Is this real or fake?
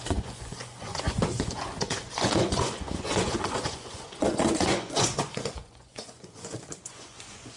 fake